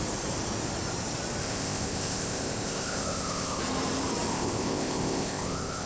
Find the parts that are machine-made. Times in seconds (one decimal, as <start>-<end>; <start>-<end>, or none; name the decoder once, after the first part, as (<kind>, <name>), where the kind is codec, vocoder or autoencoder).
1.4-3.6 (codec, ZipCodec); 4.3-5.9